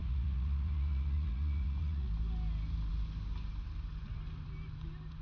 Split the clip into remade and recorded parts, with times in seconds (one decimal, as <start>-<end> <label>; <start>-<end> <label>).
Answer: 0.0-2.1 remade; 2.1-5.2 recorded

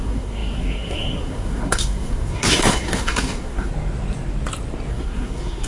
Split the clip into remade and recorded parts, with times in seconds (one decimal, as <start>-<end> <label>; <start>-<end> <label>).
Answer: 0.0-3.7 remade; 3.7-4.9 recorded; 4.9-5.7 remade

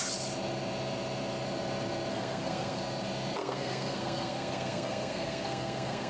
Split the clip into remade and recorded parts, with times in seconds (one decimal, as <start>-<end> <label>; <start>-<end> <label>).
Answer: 0.0-2.1 recorded; 2.1-2.8 remade; 2.8-3.4 recorded; 3.4-6.1 remade

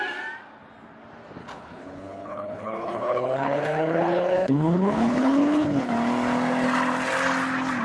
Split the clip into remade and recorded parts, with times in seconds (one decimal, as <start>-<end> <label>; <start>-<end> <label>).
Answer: 0.0-1.4 recorded; 1.4-5.9 remade; 5.9-7.8 recorded